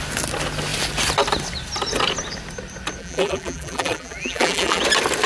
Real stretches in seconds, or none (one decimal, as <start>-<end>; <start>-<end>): 0.0-3.0; 4.8-5.3